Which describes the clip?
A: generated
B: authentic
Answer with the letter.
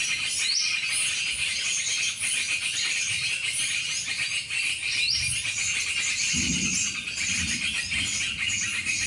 B